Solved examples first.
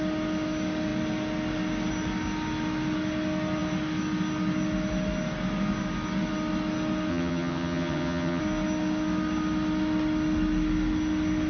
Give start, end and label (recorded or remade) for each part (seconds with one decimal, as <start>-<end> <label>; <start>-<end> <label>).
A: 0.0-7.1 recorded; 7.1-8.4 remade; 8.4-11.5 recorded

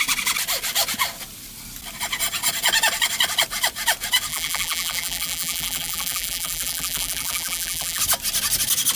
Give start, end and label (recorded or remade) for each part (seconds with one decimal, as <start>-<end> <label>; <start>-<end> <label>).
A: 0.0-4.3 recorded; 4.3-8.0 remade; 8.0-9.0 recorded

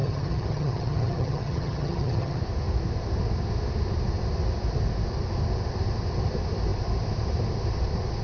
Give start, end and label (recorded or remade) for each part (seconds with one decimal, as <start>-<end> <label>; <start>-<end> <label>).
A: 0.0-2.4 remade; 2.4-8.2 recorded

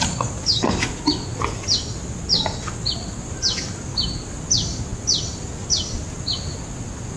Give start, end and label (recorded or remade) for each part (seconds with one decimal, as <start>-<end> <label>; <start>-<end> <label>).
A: 0.0-7.2 recorded

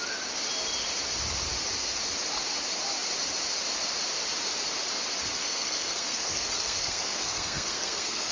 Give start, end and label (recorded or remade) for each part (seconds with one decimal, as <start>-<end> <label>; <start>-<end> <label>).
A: 0.0-5.4 recorded; 5.4-8.3 remade

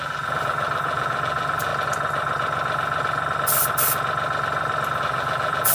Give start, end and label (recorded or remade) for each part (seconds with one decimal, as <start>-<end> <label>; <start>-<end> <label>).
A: 0.0-1.7 remade; 1.7-5.0 recorded; 5.0-5.7 remade